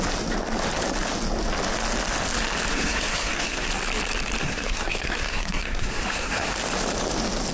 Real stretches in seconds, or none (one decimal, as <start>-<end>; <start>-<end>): 0.0-2.7; 3.7-4.4; 6.5-7.5